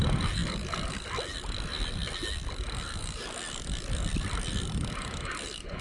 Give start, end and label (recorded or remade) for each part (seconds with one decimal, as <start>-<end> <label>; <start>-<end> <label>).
0.0-5.8 recorded